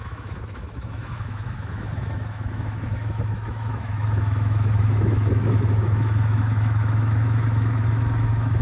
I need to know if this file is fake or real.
fake